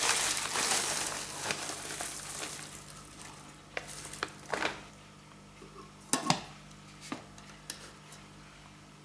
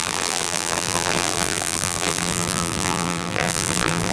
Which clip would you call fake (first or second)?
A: second